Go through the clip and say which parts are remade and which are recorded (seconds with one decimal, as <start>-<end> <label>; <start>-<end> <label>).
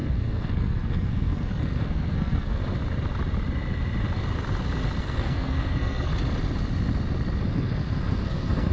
0.0-2.6 remade; 2.6-5.0 recorded; 5.0-6.1 remade; 6.1-7.4 recorded; 7.4-8.7 remade